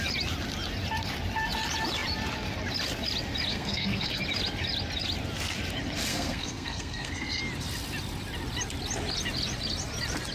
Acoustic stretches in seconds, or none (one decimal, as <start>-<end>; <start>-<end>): 0.0-3.5; 4.2-6.1; 7.4-10.3